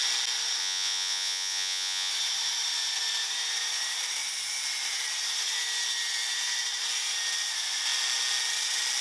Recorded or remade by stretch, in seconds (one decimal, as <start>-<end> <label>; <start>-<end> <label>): 0.0-0.6 recorded; 0.6-2.1 remade; 2.1-9.0 recorded